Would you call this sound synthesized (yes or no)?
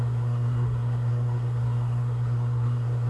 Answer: yes